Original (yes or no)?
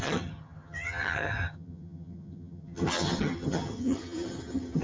no